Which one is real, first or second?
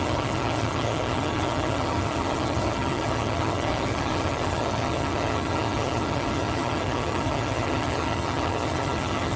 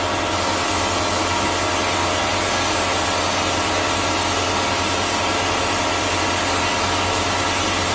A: second